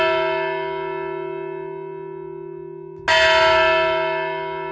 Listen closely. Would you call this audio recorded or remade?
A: recorded